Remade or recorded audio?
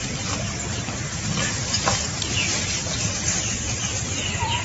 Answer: recorded